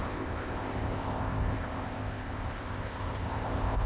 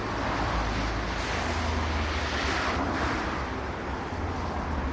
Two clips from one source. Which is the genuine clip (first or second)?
second